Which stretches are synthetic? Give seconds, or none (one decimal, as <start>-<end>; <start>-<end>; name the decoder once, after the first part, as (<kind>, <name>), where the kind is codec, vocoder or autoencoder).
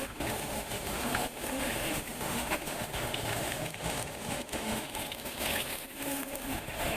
0.0-7.0 (autoencoder, DAC-VAE)